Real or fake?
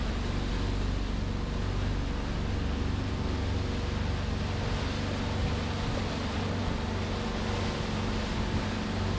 real